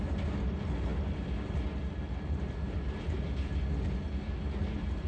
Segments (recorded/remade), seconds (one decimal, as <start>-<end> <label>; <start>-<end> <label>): 0.0-5.1 recorded